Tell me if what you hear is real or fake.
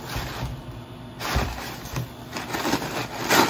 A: real